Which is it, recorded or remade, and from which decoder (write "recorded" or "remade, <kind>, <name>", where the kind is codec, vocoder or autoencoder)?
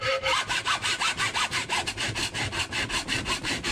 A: recorded